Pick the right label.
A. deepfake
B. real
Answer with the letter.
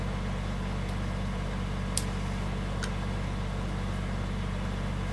B